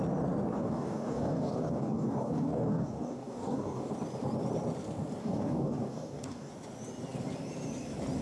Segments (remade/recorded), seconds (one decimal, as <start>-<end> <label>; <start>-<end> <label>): 0.0-0.5 recorded; 0.5-3.9 remade; 3.9-5.2 recorded; 5.2-6.5 remade; 6.5-8.2 recorded